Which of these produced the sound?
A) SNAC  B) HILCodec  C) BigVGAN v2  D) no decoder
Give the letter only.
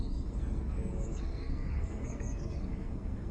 A